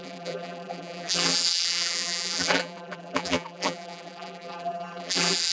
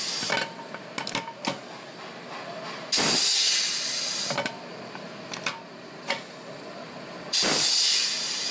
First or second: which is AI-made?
first